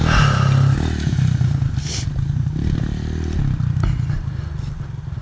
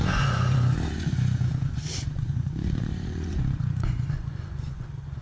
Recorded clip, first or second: first